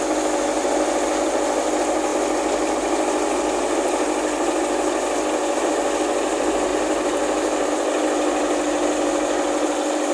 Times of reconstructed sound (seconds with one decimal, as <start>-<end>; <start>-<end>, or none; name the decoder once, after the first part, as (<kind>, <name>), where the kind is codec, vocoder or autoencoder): none